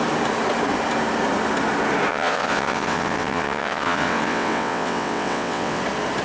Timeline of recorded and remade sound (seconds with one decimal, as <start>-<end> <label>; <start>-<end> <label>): 0.0-2.1 recorded; 2.1-5.8 remade; 5.8-6.2 recorded